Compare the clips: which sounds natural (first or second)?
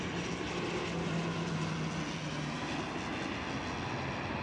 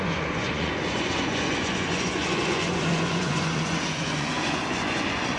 first